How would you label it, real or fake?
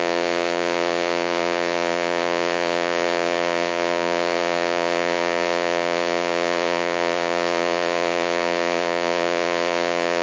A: fake